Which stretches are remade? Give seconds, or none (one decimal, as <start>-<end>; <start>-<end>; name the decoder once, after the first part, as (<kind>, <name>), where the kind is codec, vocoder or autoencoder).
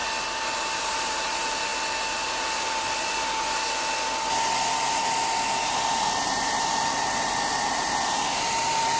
0.8-1.7 (vocoder, BigVGAN v2); 5.9-9.0